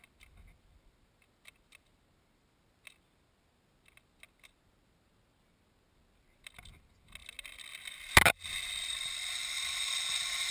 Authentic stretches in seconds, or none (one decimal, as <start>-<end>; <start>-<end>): 0.0-10.5